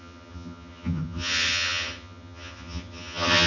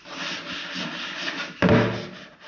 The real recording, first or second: second